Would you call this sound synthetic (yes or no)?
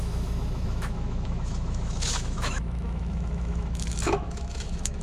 yes